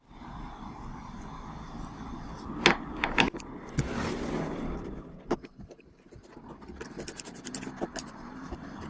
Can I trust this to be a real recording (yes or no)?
yes